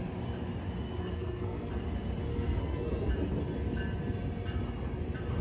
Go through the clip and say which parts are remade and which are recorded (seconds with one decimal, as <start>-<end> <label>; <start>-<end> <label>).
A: 0.0-1.0 recorded; 1.0-1.7 remade; 1.7-2.3 recorded; 2.3-3.1 remade; 3.1-5.4 recorded